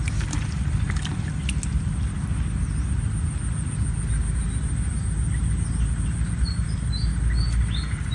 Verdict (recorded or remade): recorded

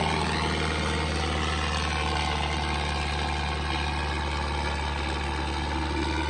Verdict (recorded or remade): recorded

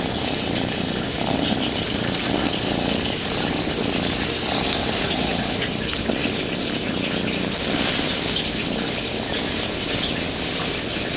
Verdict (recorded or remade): recorded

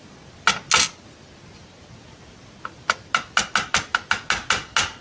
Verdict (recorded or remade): recorded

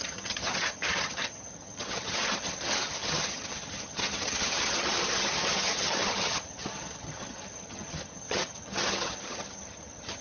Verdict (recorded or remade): remade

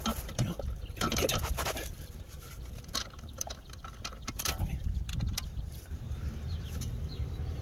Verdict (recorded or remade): remade